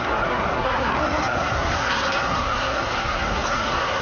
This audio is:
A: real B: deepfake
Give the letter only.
B